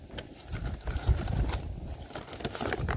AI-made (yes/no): no